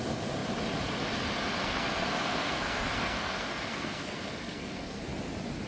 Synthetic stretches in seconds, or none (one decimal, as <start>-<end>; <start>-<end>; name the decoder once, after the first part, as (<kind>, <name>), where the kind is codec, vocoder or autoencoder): 1.6-5.0 (codec, SNAC)